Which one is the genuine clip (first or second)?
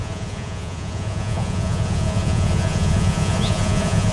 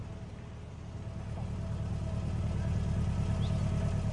second